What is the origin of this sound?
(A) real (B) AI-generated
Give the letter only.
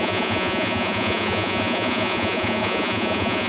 B